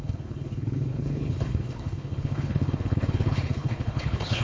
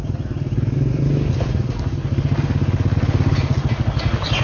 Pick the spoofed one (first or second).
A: first